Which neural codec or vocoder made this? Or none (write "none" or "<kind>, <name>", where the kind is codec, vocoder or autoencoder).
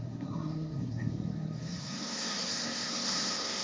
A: codec, SNAC